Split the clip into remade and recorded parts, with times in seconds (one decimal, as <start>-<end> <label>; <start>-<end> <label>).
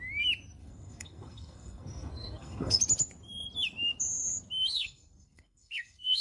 0.0-0.6 recorded; 0.6-2.8 remade; 2.8-4.7 recorded; 4.7-6.2 remade